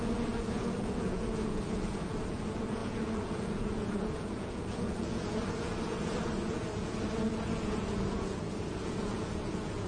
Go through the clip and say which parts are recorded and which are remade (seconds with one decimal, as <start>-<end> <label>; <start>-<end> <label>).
0.0-9.9 remade